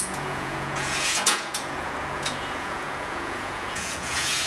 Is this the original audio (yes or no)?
no